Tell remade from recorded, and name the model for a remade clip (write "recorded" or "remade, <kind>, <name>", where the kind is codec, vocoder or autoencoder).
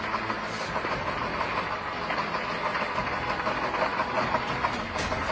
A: recorded